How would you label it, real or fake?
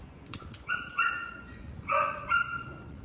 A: fake